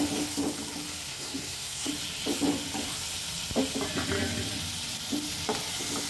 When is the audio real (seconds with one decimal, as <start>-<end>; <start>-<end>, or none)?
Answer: 0.0-1.1; 1.9-6.1